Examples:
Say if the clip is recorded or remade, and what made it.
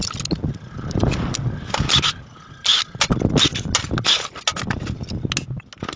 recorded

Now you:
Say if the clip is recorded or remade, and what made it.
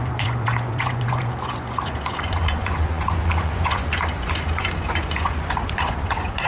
remade, vocoder, Vocos